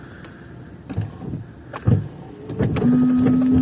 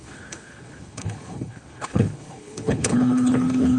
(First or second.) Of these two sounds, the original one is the first